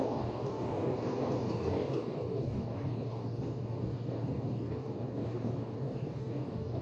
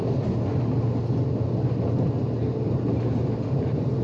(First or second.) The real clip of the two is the second